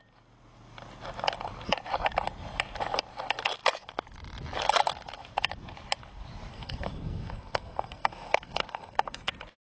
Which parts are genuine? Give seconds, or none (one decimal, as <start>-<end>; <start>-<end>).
0.0-6.5; 9.3-9.8